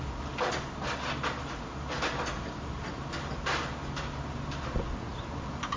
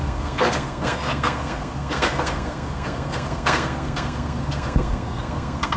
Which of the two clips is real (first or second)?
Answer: first